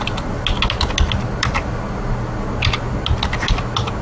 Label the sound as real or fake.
real